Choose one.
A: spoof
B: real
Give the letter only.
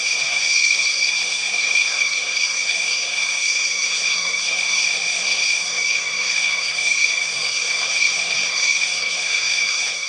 A